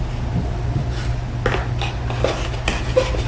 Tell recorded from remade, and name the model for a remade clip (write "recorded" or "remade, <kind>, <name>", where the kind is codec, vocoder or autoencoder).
recorded